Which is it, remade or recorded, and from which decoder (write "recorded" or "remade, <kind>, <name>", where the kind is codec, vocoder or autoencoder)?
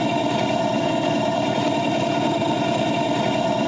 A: recorded